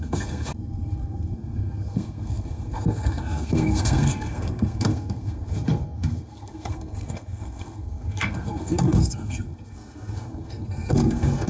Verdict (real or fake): fake